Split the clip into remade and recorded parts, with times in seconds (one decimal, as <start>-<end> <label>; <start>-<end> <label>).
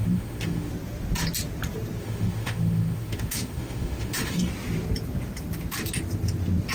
0.0-0.7 remade; 0.7-2.0 recorded; 2.0-4.5 remade; 4.5-6.7 recorded